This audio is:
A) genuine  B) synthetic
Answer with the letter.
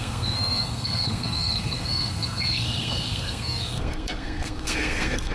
B